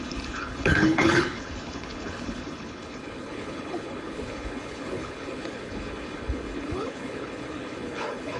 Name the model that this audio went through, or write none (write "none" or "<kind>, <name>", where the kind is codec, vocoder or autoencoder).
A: codec, HILCodec